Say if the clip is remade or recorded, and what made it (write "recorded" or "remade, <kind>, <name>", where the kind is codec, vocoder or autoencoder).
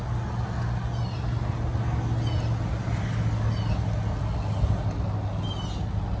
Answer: recorded